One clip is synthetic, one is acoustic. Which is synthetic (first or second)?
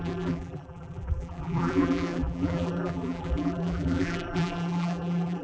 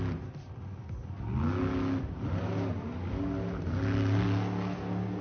first